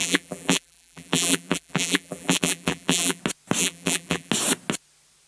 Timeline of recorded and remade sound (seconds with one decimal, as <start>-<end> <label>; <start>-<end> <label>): 0.0-3.2 remade; 3.2-3.6 recorded; 3.6-4.3 remade; 4.3-5.3 recorded